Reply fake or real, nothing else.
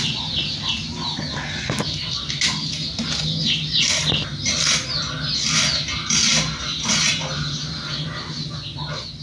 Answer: real